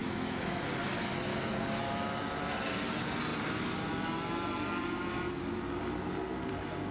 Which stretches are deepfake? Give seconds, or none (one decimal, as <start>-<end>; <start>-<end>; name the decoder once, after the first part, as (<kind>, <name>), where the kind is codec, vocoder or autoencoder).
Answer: 0.0-0.6 (autoencoder, DAC-VAE); 1.3-2.5